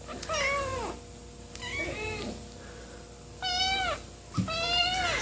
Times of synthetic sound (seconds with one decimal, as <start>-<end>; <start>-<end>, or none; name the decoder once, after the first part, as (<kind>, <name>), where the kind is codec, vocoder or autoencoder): none